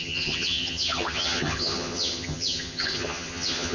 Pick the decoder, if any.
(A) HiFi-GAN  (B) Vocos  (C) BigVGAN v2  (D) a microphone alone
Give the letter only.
A